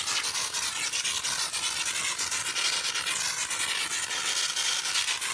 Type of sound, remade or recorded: recorded